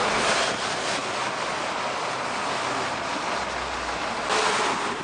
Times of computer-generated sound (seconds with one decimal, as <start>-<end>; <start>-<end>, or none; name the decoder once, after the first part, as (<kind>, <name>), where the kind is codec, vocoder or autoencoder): none

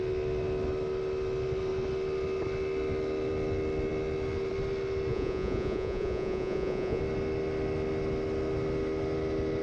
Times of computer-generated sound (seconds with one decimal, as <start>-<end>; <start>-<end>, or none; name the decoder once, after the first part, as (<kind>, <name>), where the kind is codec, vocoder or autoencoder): 5.1-7.0 (vocoder, Vocos)